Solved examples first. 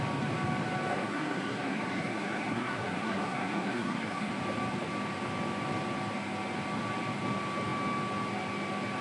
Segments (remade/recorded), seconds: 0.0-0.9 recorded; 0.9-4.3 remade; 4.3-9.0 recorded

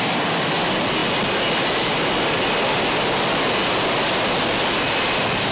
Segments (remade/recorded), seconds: 0.0-5.5 recorded

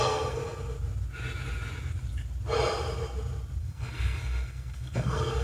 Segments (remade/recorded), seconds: 0.0-0.4 remade; 0.4-3.6 recorded; 3.6-5.4 remade

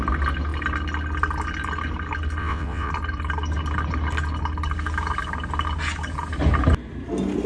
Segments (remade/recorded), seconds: 0.0-2.4 recorded; 2.4-2.9 remade; 2.9-7.5 recorded